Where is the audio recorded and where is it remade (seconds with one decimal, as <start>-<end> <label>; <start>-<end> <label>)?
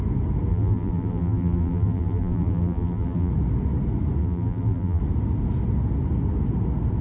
0.0-0.5 recorded; 0.5-3.3 remade; 3.3-4.2 recorded; 4.2-5.0 remade; 5.0-7.0 recorded